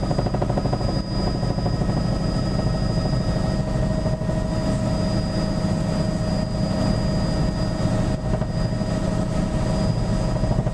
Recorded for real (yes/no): yes